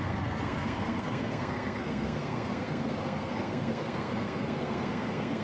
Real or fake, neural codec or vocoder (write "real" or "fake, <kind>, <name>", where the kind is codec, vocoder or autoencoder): fake, codec, SNAC